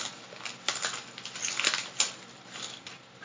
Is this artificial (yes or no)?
no